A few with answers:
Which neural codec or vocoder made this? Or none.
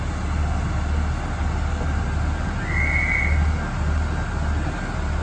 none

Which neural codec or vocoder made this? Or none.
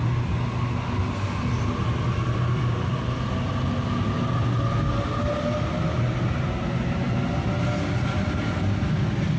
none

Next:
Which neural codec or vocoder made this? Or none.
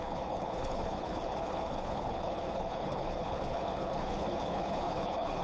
codec, HILCodec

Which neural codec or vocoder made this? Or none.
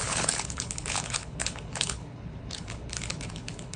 codec, HILCodec